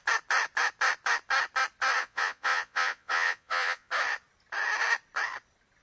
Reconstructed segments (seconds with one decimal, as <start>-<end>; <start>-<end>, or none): 2.0-3.9